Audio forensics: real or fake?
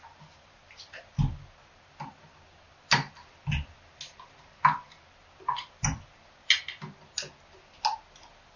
real